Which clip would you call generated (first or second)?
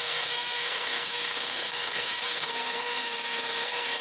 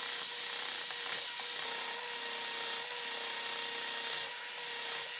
first